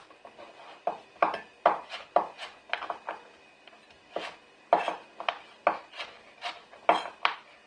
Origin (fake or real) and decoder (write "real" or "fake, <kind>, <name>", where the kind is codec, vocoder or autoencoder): real